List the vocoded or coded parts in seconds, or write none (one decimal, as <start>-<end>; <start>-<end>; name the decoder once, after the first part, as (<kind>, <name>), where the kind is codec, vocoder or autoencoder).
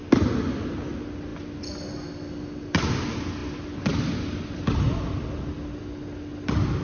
none